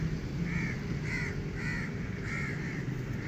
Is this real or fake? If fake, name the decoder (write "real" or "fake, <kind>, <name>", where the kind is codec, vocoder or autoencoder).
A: real